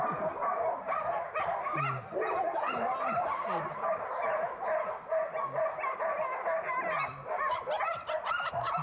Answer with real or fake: real